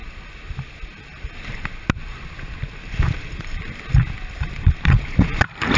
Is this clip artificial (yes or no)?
no